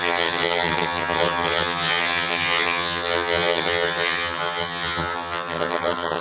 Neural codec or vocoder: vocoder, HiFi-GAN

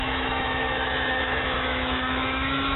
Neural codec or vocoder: autoencoder, DAC-VAE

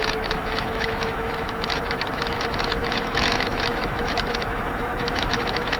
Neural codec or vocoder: autoencoder, DAC-VAE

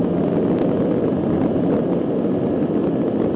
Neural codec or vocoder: none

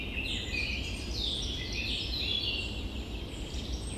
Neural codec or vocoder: none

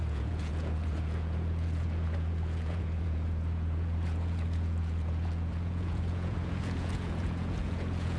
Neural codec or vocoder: vocoder, Vocos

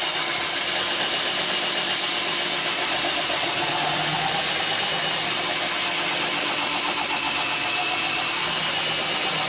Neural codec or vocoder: none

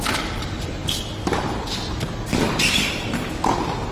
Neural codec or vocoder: none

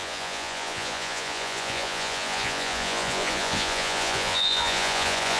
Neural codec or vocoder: vocoder, Vocos